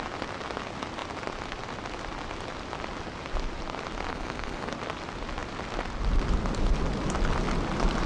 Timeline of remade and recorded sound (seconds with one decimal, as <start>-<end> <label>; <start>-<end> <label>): 0.0-4.1 recorded; 4.1-4.7 remade; 4.7-8.1 recorded